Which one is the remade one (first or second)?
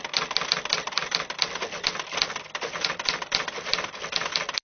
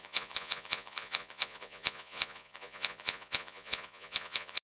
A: second